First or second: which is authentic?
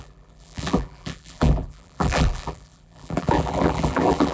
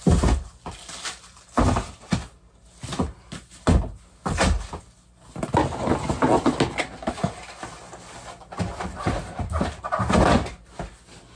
second